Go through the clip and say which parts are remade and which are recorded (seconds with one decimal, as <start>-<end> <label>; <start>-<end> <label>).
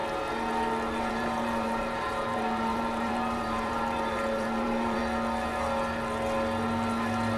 0.0-1.1 recorded; 1.1-5.0 remade; 5.0-7.4 recorded